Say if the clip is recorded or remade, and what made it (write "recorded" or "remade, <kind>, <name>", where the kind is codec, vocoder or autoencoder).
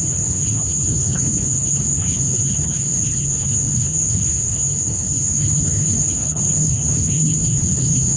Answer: remade, codec, HILCodec